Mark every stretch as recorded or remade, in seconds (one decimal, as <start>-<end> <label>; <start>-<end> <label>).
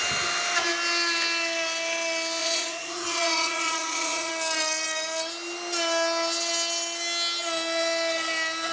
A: 0.0-2.4 recorded; 2.4-4.3 remade; 4.3-8.7 recorded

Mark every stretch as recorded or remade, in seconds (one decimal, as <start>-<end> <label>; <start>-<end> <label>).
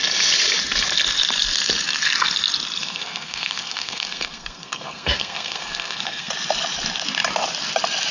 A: 0.0-2.8 recorded; 2.8-6.3 remade; 6.3-8.1 recorded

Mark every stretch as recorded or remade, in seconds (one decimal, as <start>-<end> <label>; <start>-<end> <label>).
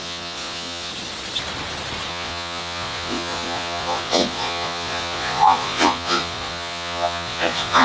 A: 0.0-0.9 remade; 0.9-2.1 recorded; 2.1-7.8 remade